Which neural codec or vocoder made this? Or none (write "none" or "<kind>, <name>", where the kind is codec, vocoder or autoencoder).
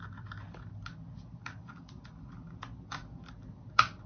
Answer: none